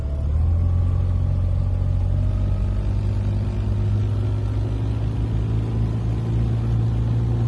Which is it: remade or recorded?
recorded